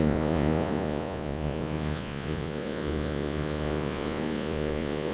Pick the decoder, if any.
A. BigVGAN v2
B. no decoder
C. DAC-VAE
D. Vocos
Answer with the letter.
D